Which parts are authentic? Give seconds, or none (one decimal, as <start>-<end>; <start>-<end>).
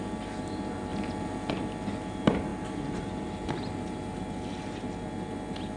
0.0-5.8